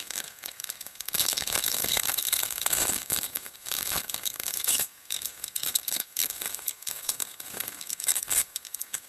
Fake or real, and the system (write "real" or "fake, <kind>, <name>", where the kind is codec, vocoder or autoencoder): fake, codec, SNAC